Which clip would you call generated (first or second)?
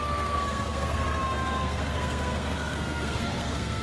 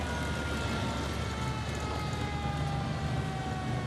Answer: first